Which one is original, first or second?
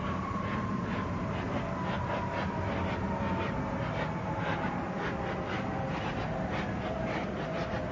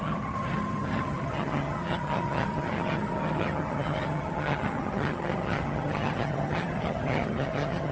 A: first